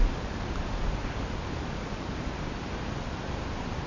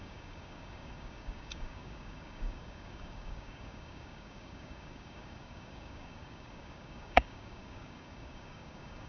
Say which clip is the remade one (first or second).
second